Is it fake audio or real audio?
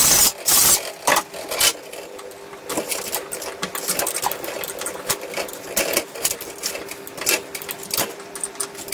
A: real